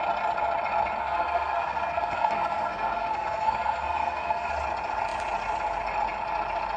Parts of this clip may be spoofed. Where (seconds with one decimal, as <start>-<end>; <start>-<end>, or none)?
1.0-4.5